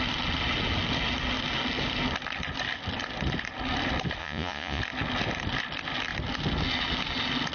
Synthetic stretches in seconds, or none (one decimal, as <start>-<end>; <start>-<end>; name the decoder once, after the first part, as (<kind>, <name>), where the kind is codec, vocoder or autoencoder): 4.2-4.8 (vocoder, Vocos)